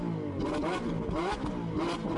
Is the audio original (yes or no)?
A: yes